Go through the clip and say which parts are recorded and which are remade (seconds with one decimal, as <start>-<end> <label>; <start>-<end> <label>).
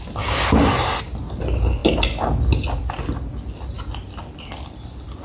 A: 0.0-5.2 recorded